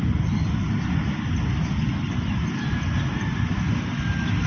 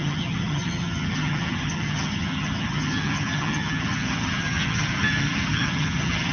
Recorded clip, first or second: first